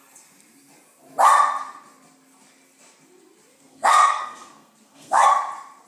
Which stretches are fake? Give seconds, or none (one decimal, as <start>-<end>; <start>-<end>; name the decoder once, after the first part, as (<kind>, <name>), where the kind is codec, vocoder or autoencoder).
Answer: 3.5-5.3 (codec, SNAC)